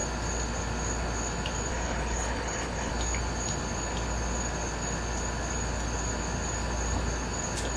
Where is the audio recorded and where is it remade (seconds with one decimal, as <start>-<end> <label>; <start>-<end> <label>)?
0.0-1.7 recorded; 1.7-2.9 remade; 2.9-7.8 recorded

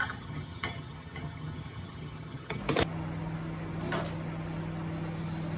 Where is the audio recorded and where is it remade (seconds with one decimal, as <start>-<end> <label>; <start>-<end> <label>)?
0.0-2.6 remade; 2.6-5.6 recorded

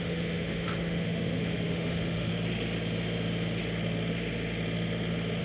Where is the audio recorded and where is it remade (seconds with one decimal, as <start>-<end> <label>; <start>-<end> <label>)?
0.0-2.3 remade; 2.3-5.4 recorded

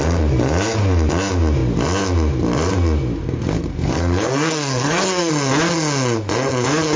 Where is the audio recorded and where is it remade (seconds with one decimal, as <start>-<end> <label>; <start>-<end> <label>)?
0.0-3.2 recorded; 3.2-5.3 remade; 5.3-7.0 recorded

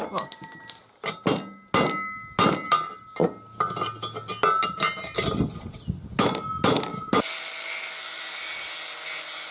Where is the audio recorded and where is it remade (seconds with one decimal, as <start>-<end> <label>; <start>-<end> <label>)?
0.0-9.5 recorded

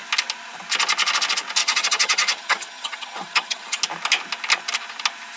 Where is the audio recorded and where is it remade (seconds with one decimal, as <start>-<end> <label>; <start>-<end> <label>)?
0.0-1.6 recorded; 1.6-3.8 remade; 3.8-5.4 recorded